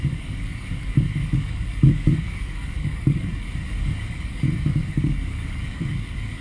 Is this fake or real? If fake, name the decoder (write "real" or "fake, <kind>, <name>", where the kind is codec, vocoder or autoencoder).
fake, codec, DAC